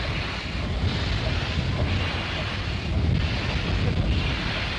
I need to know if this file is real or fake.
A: real